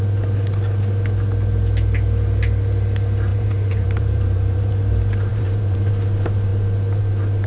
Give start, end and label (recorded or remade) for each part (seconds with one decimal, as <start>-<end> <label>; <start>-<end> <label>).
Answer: 0.0-3.3 recorded; 3.3-4.8 remade; 4.8-5.3 recorded; 5.3-5.9 remade; 5.9-7.5 recorded